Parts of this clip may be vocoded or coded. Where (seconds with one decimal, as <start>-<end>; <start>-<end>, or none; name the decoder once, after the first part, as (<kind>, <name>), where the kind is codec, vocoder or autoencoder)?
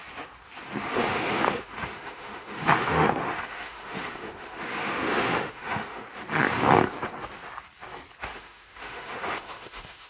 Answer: 0.9-6.0 (autoencoder, DAC-VAE); 8.2-10.1